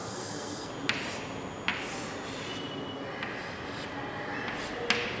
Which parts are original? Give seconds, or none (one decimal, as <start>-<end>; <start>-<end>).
0.7-5.2